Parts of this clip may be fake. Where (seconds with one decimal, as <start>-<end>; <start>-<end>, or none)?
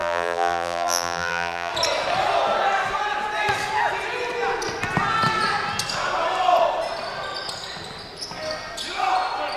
0.0-1.7